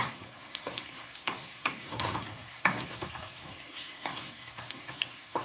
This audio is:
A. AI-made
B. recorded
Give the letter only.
A